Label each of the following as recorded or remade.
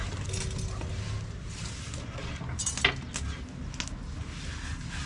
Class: recorded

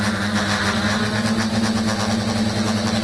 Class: recorded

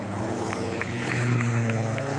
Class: remade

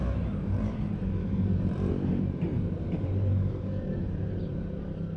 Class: remade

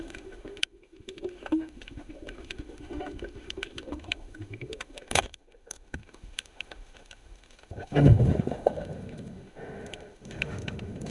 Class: remade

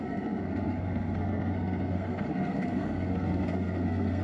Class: remade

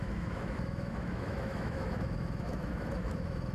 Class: remade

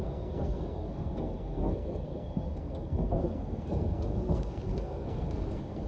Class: remade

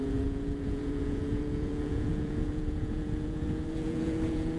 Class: remade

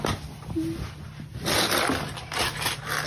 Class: recorded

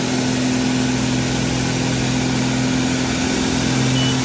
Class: recorded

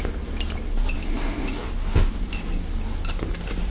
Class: recorded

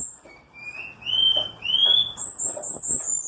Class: recorded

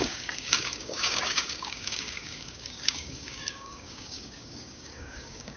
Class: remade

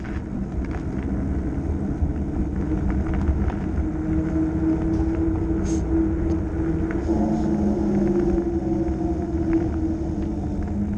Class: recorded